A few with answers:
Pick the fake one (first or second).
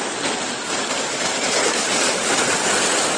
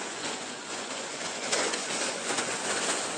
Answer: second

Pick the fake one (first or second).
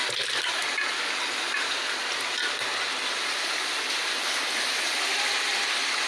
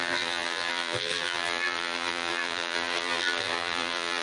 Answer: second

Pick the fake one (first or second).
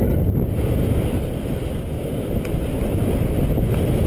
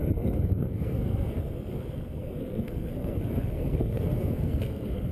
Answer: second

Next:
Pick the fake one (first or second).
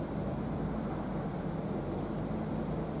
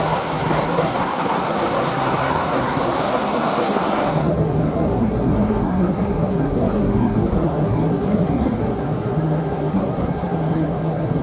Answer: second